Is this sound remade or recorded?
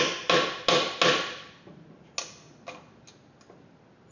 recorded